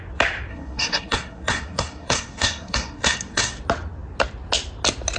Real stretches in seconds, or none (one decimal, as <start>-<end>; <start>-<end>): 0.0-0.5; 3.6-5.2